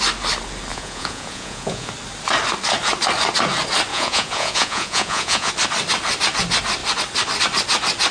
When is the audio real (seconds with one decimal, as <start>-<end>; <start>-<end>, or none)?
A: 0.0-0.7; 1.9-3.9; 5.5-8.1